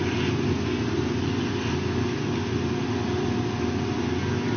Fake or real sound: real